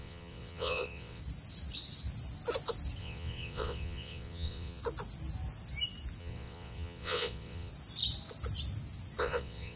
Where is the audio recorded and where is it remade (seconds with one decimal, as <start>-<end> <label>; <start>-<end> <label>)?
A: 0.0-1.2 remade; 1.2-3.0 recorded; 3.0-4.8 remade; 4.8-6.2 recorded; 6.2-7.7 remade; 7.7-9.2 recorded; 9.2-9.8 remade

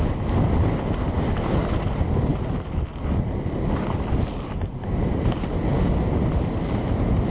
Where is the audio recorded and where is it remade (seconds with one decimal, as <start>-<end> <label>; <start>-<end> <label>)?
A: 0.0-7.3 recorded

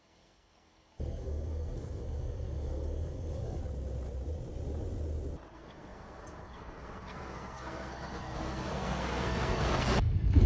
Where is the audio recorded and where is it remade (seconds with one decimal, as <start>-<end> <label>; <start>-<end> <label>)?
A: 0.0-3.6 remade; 3.6-5.5 recorded; 5.5-10.5 remade